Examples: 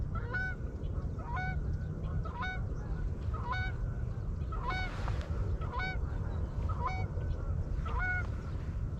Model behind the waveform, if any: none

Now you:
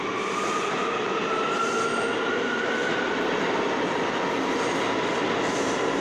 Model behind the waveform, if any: none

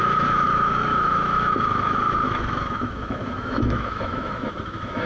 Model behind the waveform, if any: autoencoder, DAC-VAE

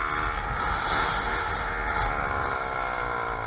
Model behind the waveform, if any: none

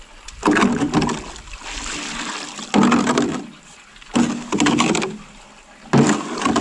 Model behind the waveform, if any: none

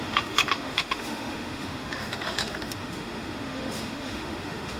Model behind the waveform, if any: autoencoder, DAC-VAE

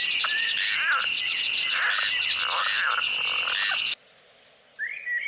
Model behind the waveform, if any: none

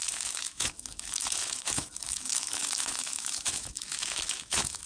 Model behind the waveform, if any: autoencoder, DAC-VAE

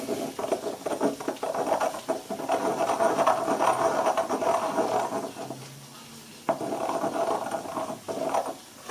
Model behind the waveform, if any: none